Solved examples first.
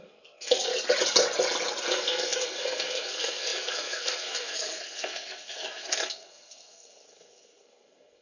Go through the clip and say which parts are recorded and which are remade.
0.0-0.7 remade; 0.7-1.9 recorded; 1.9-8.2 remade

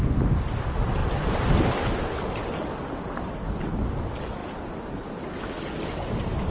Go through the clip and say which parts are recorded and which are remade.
0.0-6.5 recorded

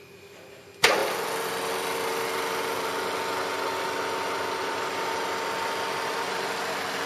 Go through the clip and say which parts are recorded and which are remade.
0.0-1.0 recorded; 1.0-2.9 remade; 2.9-4.6 recorded; 4.6-6.6 remade; 6.6-7.1 recorded